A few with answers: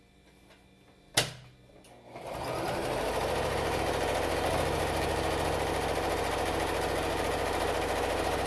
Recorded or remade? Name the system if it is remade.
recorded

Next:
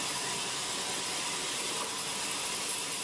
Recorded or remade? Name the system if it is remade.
recorded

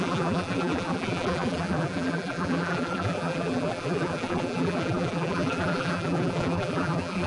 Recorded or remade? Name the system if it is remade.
remade, vocoder, BigVGAN v2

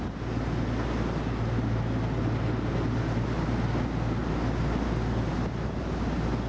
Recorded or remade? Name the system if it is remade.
recorded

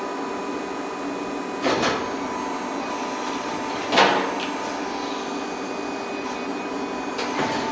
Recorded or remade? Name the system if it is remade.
recorded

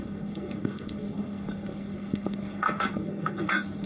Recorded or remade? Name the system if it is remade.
remade, codec, SNAC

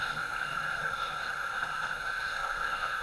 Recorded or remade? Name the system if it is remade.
remade, codec, SNAC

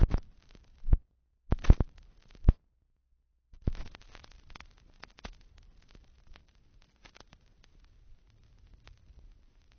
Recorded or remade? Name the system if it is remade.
recorded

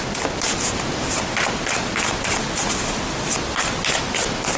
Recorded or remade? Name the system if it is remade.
recorded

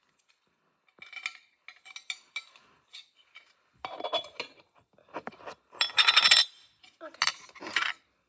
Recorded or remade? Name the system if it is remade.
recorded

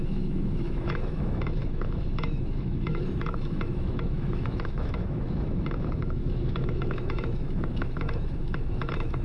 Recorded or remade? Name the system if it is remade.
remade, autoencoder, DAC-VAE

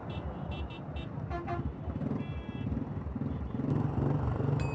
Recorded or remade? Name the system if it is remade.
recorded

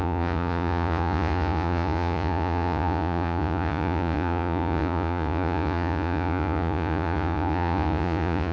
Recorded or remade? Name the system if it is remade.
remade, vocoder, Vocos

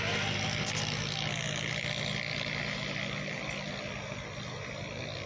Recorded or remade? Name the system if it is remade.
recorded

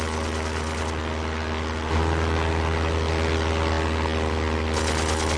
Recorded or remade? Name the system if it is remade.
recorded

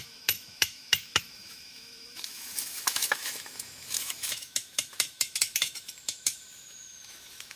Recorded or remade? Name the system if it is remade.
remade, autoencoder, DAC-VAE